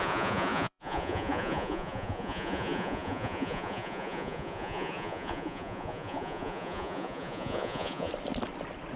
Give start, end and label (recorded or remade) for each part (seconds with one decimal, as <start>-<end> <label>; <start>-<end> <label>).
0.0-8.1 remade; 8.1-9.0 recorded